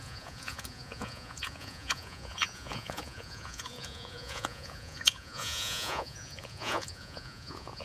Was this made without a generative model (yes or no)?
no